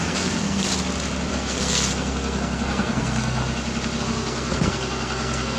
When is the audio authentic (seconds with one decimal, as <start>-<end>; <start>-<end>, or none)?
0.7-1.3; 3.4-4.0